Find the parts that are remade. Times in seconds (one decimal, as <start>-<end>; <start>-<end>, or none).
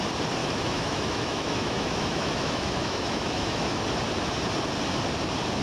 0.4-3.8